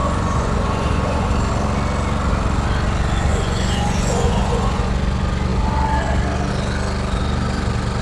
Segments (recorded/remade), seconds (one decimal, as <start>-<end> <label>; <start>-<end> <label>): 0.0-1.3 remade; 1.3-3.3 recorded; 3.3-4.9 remade; 4.9-8.0 recorded